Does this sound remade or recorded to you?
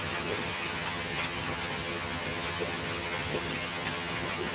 remade